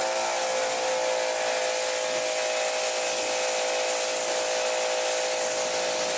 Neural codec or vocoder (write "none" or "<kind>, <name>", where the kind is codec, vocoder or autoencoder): none